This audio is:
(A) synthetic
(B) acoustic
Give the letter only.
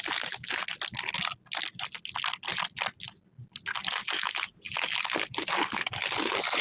B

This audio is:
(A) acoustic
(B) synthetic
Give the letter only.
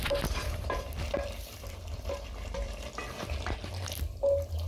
B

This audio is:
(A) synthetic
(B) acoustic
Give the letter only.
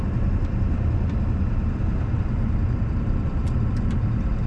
B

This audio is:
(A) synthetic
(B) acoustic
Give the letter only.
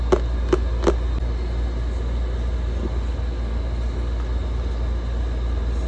B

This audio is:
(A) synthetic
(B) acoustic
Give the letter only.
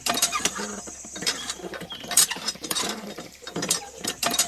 A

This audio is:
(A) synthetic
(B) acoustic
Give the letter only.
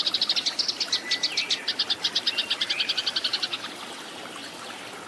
B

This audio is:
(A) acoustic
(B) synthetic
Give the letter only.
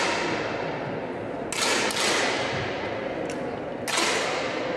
A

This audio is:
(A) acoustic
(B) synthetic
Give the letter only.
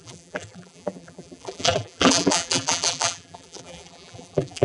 B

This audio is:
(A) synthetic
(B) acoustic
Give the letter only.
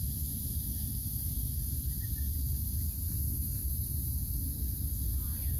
A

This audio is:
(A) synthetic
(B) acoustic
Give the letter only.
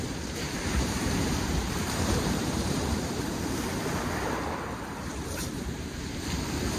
A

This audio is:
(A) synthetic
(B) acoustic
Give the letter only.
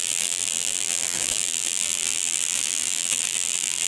A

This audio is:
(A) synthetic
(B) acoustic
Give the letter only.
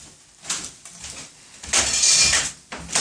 B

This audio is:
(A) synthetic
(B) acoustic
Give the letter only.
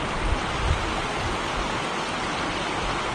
B